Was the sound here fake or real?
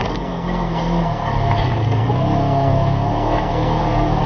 fake